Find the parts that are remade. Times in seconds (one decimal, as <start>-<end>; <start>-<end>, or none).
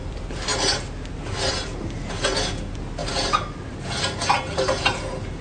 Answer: none